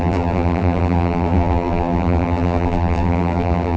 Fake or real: fake